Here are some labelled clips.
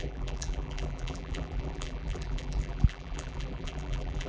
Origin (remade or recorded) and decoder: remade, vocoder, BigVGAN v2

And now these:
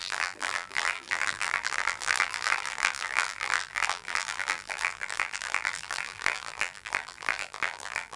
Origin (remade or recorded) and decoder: remade, vocoder, BigVGAN v2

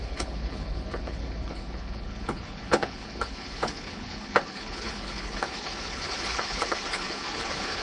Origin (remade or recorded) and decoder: remade, codec, HILCodec